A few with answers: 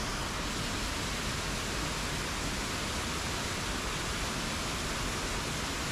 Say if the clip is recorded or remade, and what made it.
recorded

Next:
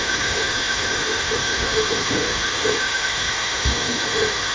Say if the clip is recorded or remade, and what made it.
remade, autoencoder, DAC-VAE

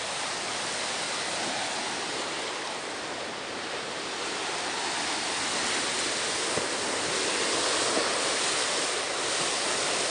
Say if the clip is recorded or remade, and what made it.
recorded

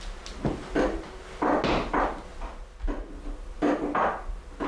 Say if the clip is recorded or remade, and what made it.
recorded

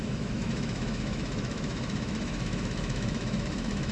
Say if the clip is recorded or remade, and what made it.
remade, autoencoder, DAC-VAE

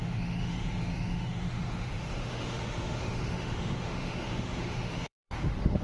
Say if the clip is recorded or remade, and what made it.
remade, autoencoder, DAC-VAE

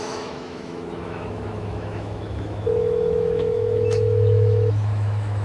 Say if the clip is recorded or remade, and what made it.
remade, autoencoder, DAC-VAE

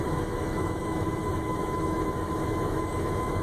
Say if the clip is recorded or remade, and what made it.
remade, autoencoder, DAC-VAE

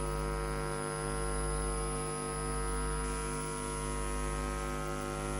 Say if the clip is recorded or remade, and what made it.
recorded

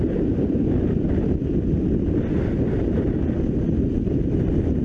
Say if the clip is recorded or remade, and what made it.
recorded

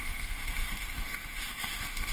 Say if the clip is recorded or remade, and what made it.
remade, autoencoder, DAC-VAE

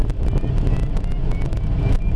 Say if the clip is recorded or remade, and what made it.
recorded